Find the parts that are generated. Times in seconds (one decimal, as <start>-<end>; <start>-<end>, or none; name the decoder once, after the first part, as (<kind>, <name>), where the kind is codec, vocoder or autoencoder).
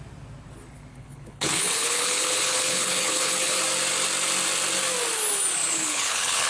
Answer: 0.9-3.6 (codec, HILCodec); 5.7-6.5